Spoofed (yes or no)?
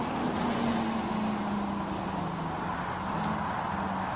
no